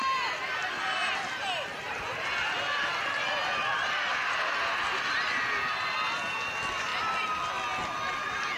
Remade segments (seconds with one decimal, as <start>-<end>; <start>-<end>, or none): none